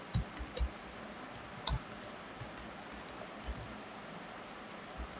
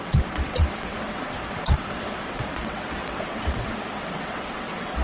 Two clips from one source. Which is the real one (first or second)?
first